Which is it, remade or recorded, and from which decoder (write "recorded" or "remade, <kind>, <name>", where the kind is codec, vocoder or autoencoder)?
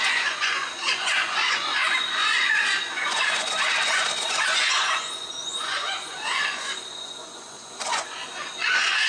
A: remade, vocoder, Vocos